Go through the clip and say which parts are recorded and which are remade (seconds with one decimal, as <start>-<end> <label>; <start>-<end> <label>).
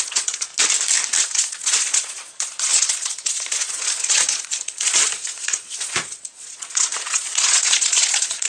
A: 0.0-0.5 remade; 0.5-1.2 recorded; 1.2-8.5 remade